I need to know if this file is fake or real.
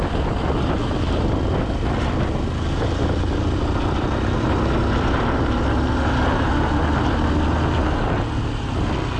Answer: real